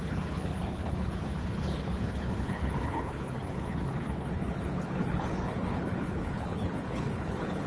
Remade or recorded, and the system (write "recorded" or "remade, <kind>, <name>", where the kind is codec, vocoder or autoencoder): remade, codec, HILCodec